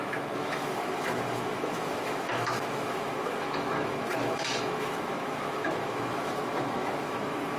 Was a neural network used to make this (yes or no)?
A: yes